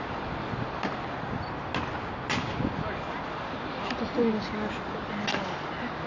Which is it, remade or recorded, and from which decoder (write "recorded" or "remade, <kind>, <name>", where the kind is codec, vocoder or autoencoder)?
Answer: recorded